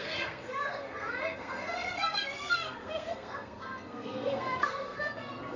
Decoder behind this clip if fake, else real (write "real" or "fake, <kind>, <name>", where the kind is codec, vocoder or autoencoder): fake, codec, SNAC